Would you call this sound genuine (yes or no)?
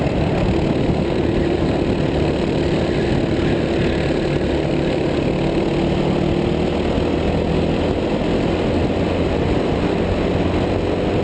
yes